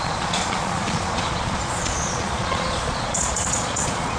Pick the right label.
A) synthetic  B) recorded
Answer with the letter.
A